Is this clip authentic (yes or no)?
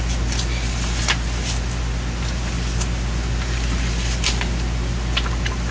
yes